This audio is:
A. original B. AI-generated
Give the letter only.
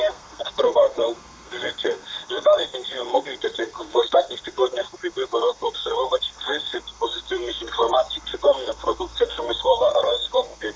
B